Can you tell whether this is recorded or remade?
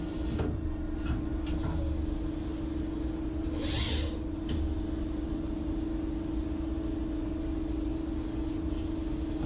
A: recorded